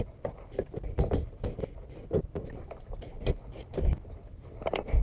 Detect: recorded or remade recorded